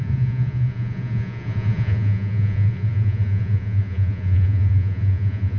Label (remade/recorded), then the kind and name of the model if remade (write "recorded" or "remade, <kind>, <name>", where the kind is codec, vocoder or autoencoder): remade, vocoder, Vocos